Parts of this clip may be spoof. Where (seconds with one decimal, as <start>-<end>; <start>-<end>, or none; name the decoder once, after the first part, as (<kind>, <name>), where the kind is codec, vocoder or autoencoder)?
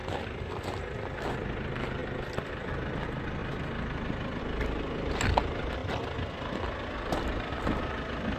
0.0-1.3 (vocoder, BigVGAN v2); 2.0-2.7